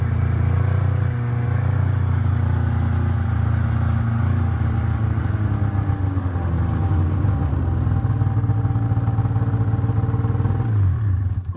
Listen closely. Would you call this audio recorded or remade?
recorded